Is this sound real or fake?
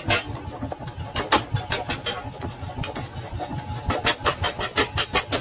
real